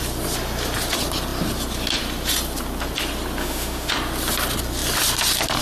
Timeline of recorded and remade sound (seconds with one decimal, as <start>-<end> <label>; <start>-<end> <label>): 0.0-3.4 recorded; 3.4-3.9 remade; 3.9-5.6 recorded